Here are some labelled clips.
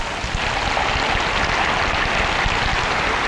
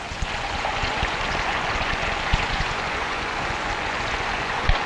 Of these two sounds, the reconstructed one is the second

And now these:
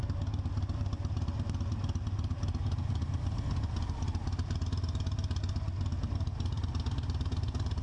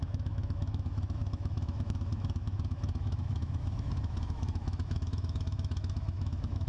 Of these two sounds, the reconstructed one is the second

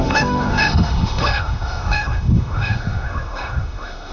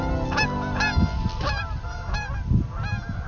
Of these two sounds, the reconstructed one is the first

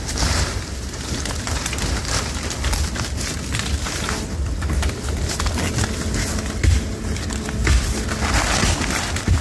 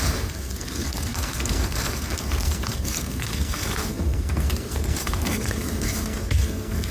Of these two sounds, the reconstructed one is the second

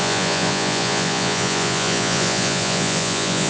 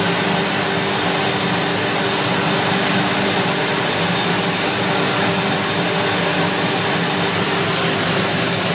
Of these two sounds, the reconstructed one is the first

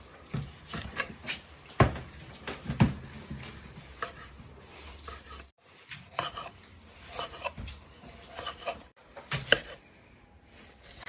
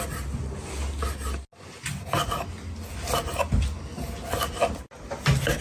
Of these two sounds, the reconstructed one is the first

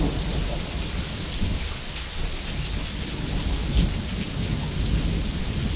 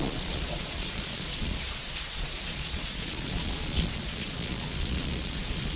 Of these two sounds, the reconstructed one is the second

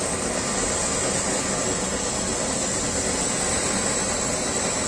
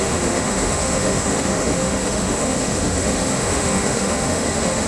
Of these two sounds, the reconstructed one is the second